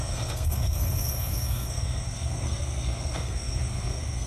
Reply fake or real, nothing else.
fake